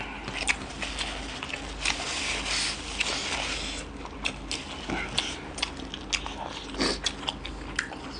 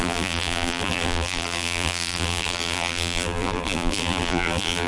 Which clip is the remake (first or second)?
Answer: second